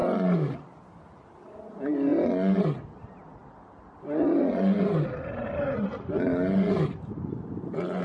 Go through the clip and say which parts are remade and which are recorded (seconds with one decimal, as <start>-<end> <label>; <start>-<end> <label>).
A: 0.0-8.0 recorded